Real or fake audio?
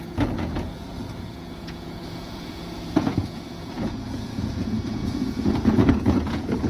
fake